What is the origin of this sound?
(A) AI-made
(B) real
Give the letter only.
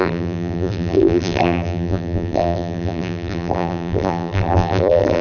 A